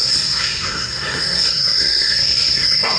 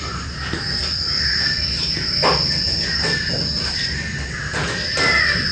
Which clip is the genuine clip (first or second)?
second